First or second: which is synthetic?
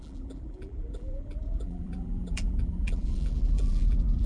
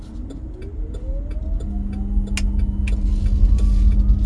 first